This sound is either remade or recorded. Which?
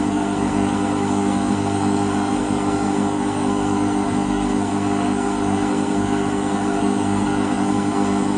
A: remade